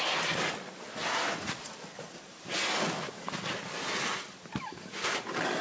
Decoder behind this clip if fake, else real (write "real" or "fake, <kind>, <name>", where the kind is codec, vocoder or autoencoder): real